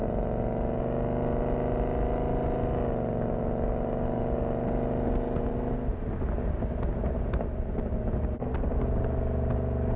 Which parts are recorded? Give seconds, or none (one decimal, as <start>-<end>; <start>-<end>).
0.0-10.0